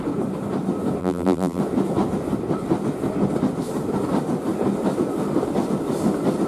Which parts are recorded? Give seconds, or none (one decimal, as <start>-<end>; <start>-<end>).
0.0-1.0; 1.6-6.5